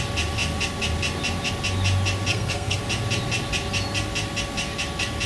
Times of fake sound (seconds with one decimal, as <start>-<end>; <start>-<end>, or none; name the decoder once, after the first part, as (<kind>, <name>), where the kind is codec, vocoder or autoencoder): 2.3-2.8 (codec, SNAC)